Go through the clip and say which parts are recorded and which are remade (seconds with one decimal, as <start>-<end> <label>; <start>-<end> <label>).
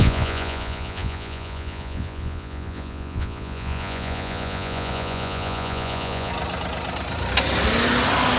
0.0-6.3 remade; 6.3-8.4 recorded